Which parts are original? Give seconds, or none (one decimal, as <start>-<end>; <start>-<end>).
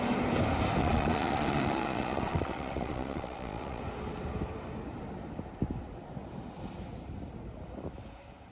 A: 0.0-0.8; 3.8-8.5